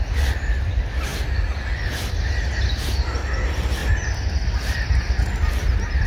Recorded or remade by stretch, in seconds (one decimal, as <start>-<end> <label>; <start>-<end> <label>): 0.0-6.1 recorded